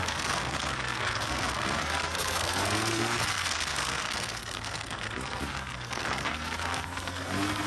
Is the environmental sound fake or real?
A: fake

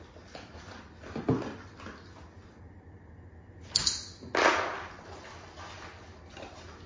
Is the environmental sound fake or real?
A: real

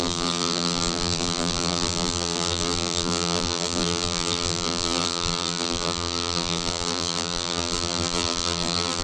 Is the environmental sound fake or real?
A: fake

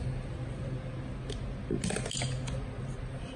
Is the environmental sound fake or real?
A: real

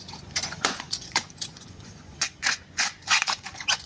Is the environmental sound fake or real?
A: fake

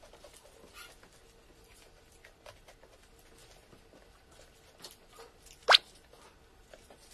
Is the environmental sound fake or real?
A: real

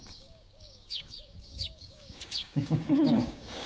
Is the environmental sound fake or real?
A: fake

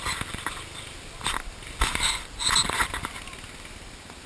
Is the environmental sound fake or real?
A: real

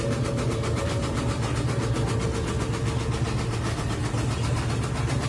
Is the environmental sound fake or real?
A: real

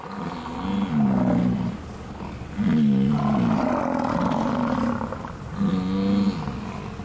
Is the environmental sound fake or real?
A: real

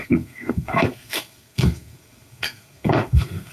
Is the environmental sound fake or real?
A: fake